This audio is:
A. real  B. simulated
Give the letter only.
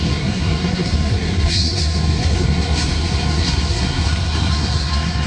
B